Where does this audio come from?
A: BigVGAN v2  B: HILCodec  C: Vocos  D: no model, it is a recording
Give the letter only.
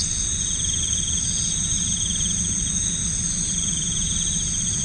D